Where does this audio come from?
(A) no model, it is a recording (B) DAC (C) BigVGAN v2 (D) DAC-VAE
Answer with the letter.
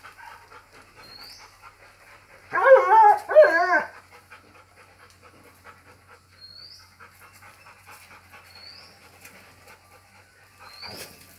A